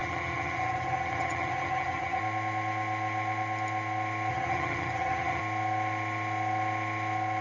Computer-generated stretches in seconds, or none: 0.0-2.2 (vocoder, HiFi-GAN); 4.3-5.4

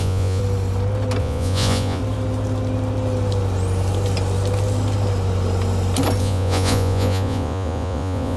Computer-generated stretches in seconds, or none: 0.0-0.4 (vocoder, Vocos); 1.2-2.0; 6.2-8.4

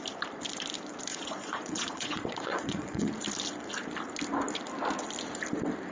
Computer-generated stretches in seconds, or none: 1.1-3.1 (vocoder, Vocos)

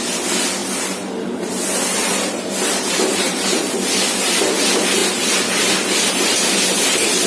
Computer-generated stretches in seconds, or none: 0.6-1.5 (vocoder, BigVGAN v2); 2.0-3.7

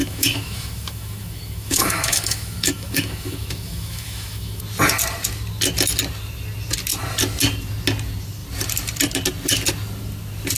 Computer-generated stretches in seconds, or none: 0.0-4.6 (autoencoder, DAC-VAE)

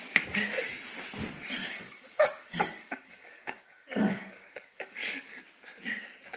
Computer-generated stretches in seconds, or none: 1.6-5.4 (codec, DAC)

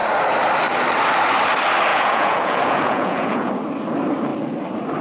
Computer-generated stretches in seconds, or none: 1.9-3.5 (vocoder, Vocos)